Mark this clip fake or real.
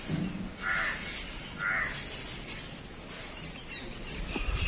real